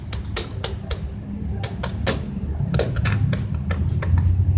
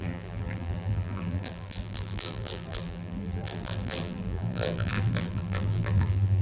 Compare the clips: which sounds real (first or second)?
first